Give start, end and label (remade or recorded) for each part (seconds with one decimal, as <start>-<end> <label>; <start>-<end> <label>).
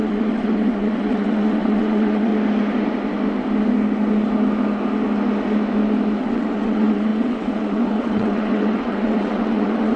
0.0-2.3 remade; 2.3-6.2 recorded; 6.2-10.0 remade